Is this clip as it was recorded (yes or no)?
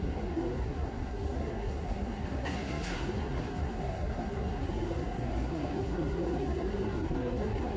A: no